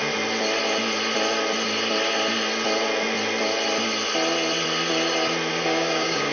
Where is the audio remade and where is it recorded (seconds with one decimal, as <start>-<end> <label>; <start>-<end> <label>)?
0.0-5.5 recorded; 5.5-6.3 remade